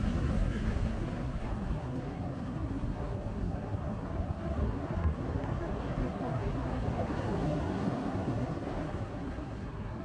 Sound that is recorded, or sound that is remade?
remade